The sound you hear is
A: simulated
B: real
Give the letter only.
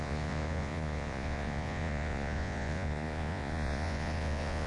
A